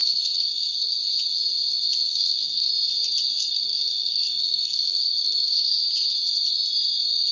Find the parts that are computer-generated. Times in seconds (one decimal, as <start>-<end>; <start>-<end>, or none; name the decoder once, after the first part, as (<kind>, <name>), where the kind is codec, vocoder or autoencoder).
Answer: 0.0-1.1 (codec, SNAC); 2.1-2.7; 3.3-5.8